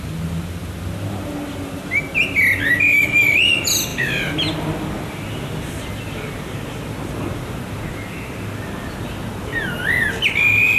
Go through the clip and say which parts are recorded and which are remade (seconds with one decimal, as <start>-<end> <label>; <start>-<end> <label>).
0.0-10.8 recorded